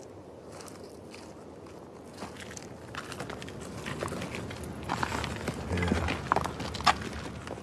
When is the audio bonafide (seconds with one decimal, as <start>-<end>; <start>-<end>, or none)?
0.0-7.6